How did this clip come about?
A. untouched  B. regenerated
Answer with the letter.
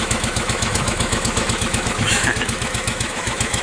B